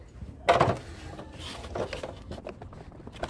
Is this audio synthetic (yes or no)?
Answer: no